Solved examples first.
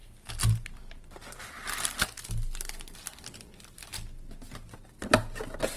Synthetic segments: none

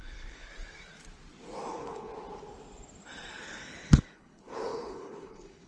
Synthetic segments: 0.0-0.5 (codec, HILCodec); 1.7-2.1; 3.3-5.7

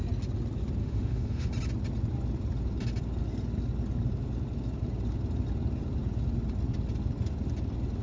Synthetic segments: 0.8-1.5 (autoencoder, DAC-VAE)

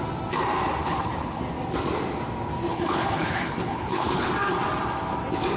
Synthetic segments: 0.8-1.4 (codec, HILCodec); 2.7-4.3